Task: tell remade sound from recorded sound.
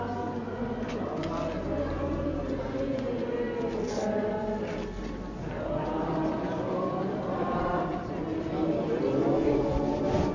recorded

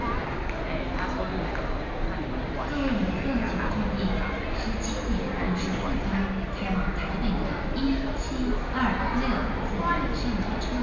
recorded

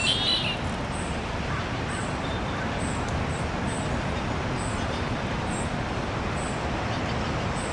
recorded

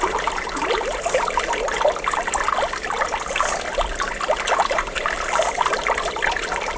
recorded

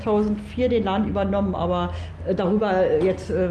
recorded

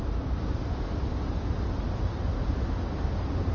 recorded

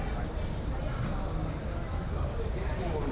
recorded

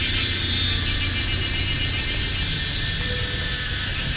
recorded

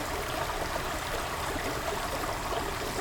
recorded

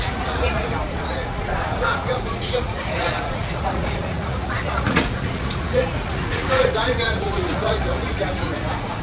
remade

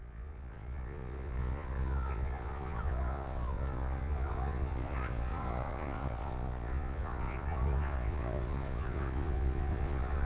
remade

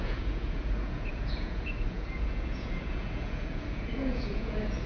remade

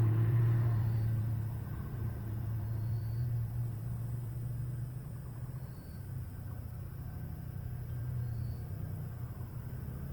remade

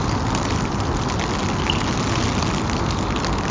recorded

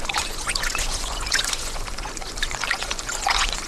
remade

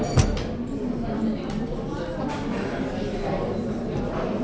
recorded